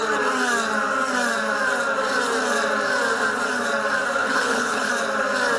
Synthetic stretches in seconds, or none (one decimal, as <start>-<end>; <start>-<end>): 4.2-4.9